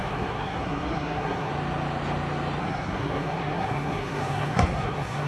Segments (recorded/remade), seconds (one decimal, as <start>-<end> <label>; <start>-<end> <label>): 0.0-1.5 remade; 1.5-2.6 recorded; 2.6-5.3 remade